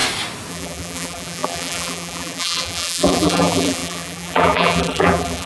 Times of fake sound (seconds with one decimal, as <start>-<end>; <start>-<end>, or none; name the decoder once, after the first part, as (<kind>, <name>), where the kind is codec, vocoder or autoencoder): 0.5-5.5 (vocoder, BigVGAN v2)